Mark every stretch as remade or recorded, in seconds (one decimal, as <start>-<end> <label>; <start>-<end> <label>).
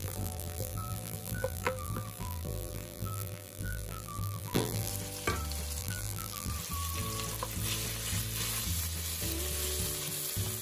0.0-4.9 remade; 4.9-5.8 recorded; 5.8-6.5 remade; 6.5-10.6 recorded